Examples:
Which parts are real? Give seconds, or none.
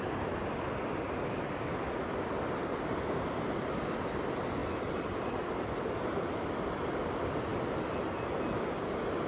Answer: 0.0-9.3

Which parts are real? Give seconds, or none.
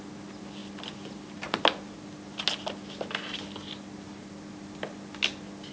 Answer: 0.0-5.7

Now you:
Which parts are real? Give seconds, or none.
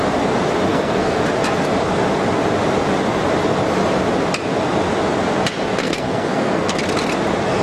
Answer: 0.0-0.7; 1.2-5.8; 6.8-7.6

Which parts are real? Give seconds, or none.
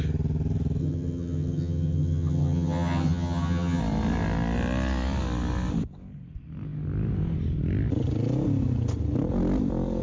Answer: 0.0-0.8; 3.8-10.0